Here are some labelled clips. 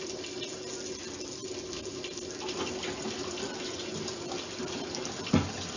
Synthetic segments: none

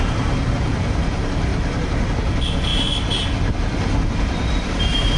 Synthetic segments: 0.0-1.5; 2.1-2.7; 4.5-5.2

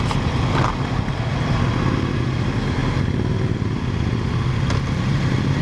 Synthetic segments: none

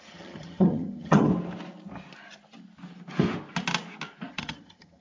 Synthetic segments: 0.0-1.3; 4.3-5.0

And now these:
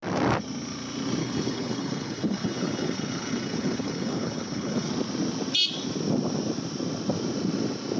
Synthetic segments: 1.2-4.9

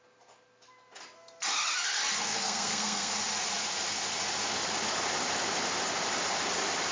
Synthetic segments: 2.2-3.1